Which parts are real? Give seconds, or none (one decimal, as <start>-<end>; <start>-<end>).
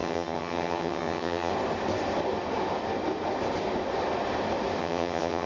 1.5-4.8